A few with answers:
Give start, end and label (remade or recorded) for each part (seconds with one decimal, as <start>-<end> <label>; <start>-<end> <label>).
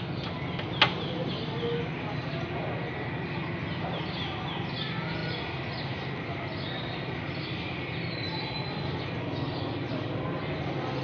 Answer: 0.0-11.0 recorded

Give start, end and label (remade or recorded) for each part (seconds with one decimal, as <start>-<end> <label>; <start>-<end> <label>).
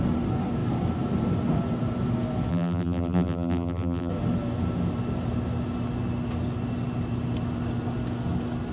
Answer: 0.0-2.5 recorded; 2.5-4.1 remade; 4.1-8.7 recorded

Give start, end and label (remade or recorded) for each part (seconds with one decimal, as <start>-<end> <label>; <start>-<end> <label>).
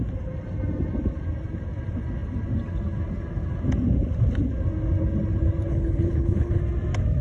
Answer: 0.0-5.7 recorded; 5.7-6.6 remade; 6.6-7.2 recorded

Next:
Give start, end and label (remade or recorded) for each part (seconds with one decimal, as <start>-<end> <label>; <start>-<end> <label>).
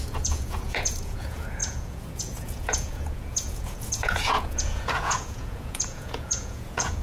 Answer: 0.0-7.0 remade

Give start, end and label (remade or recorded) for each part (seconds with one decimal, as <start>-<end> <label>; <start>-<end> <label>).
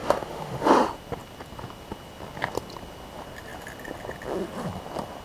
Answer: 0.0-0.7 remade; 0.7-5.2 recorded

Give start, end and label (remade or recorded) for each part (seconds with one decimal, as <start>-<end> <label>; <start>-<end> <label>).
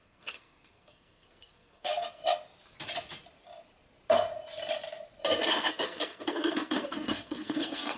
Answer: 0.0-2.2 remade; 2.2-5.5 recorded; 5.5-8.0 remade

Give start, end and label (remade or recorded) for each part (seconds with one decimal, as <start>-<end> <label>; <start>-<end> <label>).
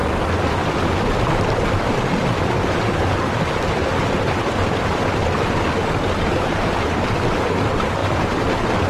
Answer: 0.0-8.9 recorded